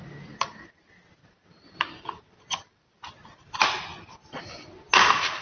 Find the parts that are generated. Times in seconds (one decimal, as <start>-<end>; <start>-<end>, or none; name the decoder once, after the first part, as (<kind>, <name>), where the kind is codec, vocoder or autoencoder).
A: none